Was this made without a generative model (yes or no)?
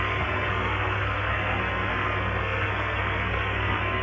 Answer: no